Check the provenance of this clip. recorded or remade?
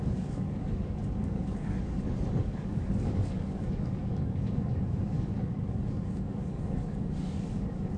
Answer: remade